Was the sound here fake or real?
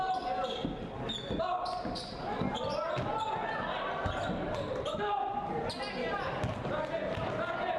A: real